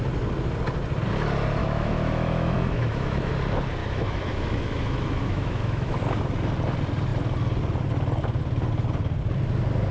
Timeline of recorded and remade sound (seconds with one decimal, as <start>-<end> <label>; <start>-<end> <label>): 0.0-1.6 recorded; 1.6-3.3 remade; 3.3-3.8 recorded; 3.8-6.0 remade; 6.0-9.9 recorded